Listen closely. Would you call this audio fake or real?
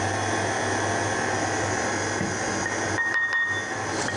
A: real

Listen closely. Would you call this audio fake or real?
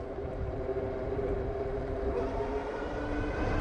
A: fake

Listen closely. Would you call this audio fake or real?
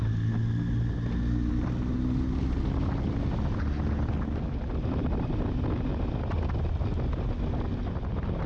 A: real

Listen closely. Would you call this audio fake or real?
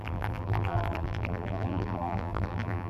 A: fake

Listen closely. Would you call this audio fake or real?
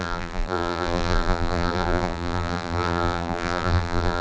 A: fake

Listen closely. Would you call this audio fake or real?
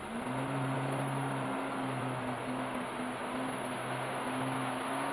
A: real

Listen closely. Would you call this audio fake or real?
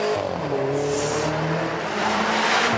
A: real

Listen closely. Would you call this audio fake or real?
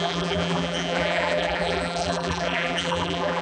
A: fake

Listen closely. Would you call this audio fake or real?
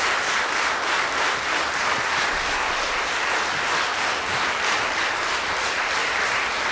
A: fake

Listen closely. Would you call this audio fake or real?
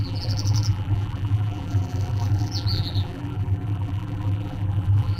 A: fake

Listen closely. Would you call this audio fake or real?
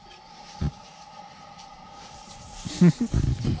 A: fake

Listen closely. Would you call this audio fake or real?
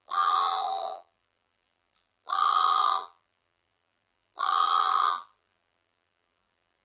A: fake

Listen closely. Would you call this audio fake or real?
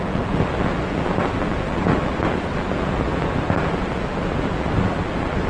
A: fake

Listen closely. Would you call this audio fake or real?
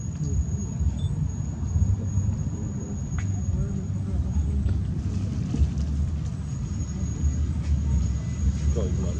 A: real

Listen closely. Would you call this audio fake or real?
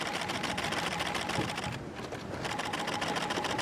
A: fake